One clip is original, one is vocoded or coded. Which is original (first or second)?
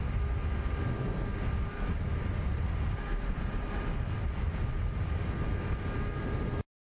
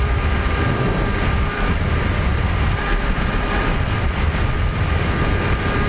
first